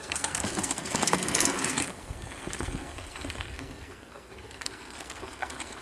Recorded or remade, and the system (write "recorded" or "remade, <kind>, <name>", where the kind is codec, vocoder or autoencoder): remade, codec, SNAC